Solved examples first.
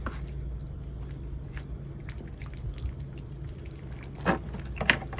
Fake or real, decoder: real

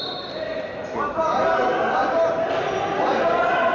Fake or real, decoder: real